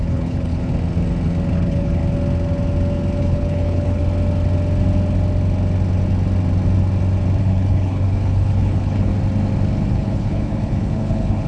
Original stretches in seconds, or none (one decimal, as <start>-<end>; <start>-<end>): 0.7-1.5; 2.0-3.2; 4.0-7.4; 9.1-9.9